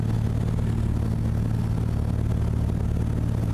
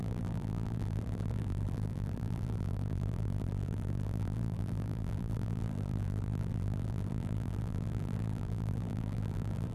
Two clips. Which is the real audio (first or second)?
first